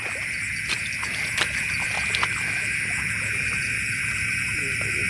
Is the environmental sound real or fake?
real